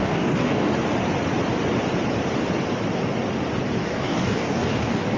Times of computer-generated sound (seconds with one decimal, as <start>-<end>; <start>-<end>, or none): 0.0-0.7; 3.8-5.2